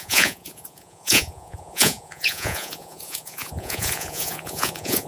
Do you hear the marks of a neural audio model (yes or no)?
yes